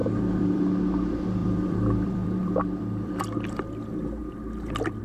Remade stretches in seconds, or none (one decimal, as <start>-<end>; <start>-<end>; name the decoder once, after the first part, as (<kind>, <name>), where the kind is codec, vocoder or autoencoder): 0.0-0.6 (vocoder, BigVGAN v2); 1.4-3.1; 4.2-5.0